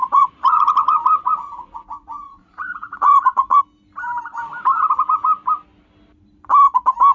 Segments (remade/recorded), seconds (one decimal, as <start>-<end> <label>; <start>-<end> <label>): 0.0-3.6 remade; 3.6-7.1 recorded